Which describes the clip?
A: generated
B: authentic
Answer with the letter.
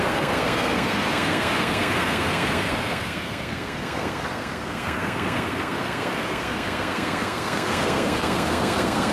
A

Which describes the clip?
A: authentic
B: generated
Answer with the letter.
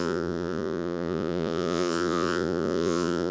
B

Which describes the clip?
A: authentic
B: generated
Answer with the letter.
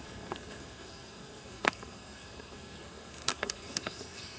B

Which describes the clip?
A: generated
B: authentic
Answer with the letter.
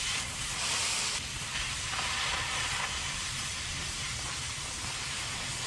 A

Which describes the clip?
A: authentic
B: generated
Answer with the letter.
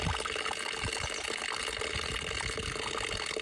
A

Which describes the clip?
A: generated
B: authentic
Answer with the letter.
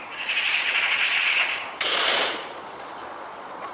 A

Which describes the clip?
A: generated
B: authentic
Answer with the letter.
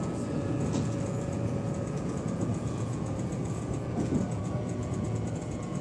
A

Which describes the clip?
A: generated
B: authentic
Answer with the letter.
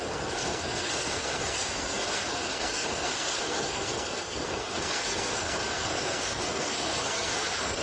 A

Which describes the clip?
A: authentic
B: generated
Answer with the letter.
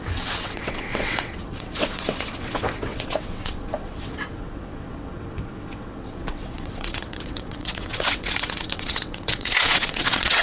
B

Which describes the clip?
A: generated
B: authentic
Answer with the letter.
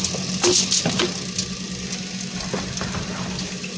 B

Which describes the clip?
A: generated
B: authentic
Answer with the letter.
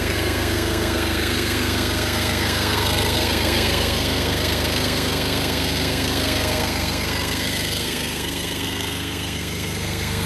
A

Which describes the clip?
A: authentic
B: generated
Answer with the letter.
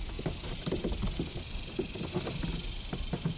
A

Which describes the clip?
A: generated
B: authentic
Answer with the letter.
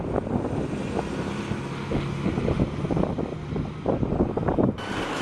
B